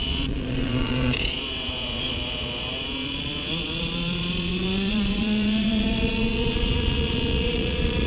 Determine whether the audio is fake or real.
fake